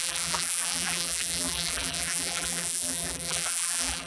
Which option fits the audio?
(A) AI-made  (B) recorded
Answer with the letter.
A